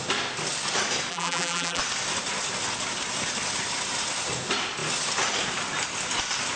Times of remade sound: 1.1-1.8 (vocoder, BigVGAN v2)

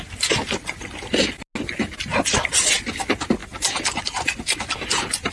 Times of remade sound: none